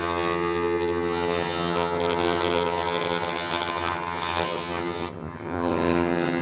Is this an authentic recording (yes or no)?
no